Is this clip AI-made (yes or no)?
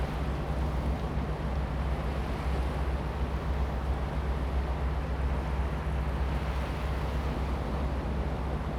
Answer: no